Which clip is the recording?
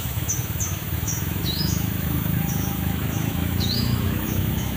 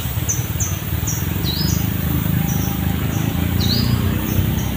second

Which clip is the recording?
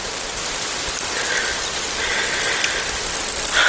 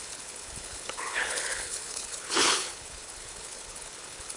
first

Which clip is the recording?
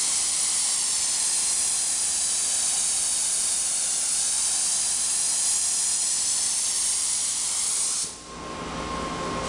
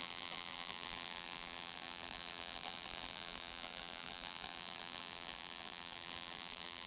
first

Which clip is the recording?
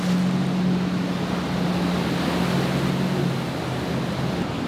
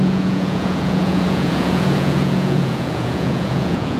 first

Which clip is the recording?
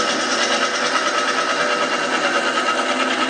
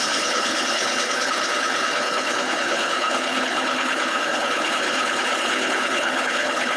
first